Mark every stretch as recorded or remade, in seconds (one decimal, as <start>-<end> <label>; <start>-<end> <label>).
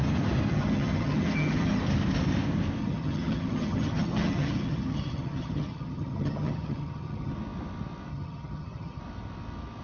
0.0-0.5 recorded; 0.5-1.8 remade; 1.8-2.8 recorded; 2.8-7.3 remade; 7.3-8.1 recorded; 8.1-9.0 remade; 9.0-9.8 recorded